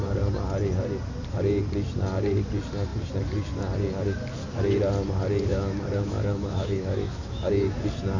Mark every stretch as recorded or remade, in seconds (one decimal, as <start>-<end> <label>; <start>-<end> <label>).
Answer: 0.0-5.5 recorded; 5.5-7.5 remade; 7.5-8.2 recorded